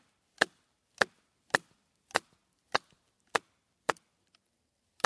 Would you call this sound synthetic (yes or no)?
no